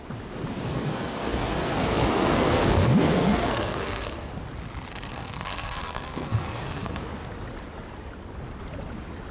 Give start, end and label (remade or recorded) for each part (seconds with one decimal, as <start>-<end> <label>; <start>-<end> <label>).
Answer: 0.0-0.7 recorded; 0.7-4.3 remade; 4.3-4.9 recorded; 4.9-7.0 remade; 7.0-9.3 recorded

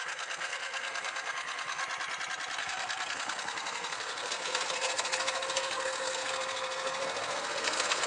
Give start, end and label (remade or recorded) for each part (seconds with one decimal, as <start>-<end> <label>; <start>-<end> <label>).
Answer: 0.0-1.8 remade; 1.8-2.6 recorded; 2.6-8.1 remade